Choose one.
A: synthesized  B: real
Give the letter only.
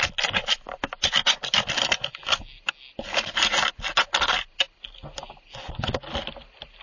B